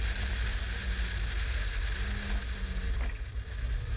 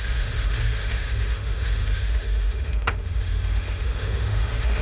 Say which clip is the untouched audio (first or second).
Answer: first